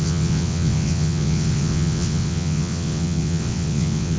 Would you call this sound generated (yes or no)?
yes